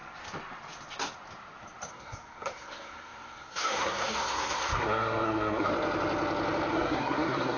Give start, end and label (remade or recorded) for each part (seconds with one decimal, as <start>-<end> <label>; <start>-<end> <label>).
0.0-1.9 recorded; 1.9-5.7 remade; 5.7-6.7 recorded; 6.7-7.6 remade